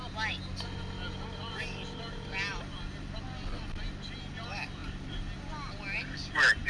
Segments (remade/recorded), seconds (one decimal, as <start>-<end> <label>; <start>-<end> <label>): 0.0-6.7 recorded